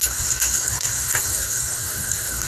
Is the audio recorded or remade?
remade